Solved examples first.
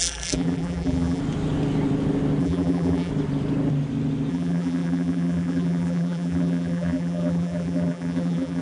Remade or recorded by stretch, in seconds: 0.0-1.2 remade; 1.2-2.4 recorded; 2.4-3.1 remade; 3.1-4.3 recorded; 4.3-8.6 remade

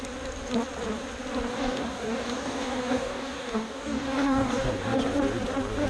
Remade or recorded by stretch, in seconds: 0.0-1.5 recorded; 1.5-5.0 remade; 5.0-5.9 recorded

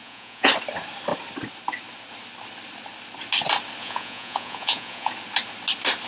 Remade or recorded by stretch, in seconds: 0.0-0.5 remade; 0.5-3.8 recorded; 3.8-5.1 remade; 5.1-6.1 recorded

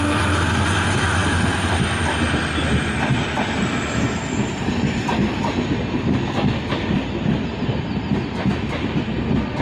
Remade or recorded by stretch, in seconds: 0.0-9.6 recorded

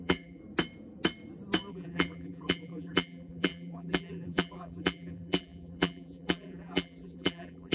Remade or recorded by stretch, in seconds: 0.0-0.4 remade; 0.4-1.7 recorded; 1.7-7.7 remade

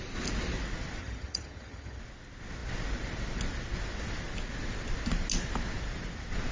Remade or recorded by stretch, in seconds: 0.0-1.0 recorded; 1.0-2.0 remade; 2.0-6.5 recorded

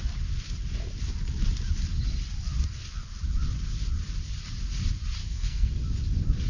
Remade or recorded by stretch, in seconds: 0.0-5.2 recorded; 5.2-5.7 remade; 5.7-6.5 recorded